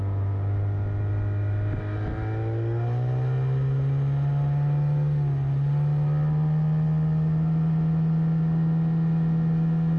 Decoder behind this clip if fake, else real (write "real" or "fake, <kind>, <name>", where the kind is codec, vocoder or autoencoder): real